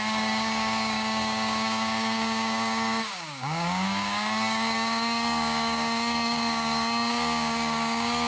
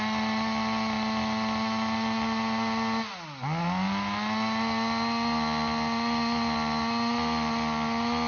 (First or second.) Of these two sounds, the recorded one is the second